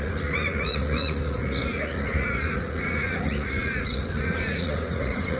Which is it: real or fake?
fake